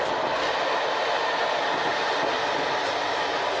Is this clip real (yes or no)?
yes